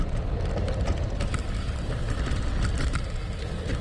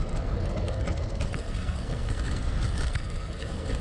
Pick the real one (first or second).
first